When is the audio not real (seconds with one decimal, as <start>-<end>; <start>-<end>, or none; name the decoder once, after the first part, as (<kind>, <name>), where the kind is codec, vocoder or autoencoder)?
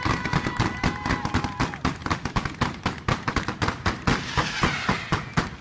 none